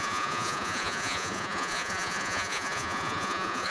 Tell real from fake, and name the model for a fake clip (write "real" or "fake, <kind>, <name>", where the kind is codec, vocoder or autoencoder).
fake, vocoder, Vocos